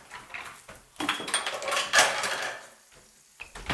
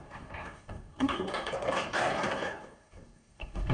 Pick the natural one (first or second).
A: first